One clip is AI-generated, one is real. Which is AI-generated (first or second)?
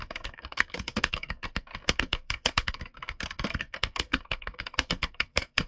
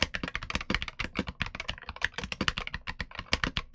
first